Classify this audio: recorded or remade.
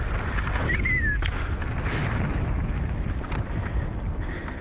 recorded